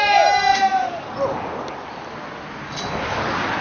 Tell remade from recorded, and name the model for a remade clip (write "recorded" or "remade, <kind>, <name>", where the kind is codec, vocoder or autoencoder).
recorded